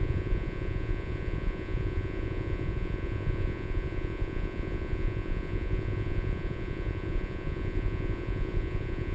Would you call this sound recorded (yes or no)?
no